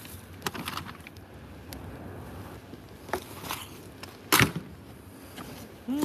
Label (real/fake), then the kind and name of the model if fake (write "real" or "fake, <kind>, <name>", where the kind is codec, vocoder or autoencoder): real